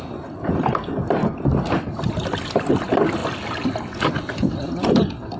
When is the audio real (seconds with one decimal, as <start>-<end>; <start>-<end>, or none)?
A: 0.0-5.4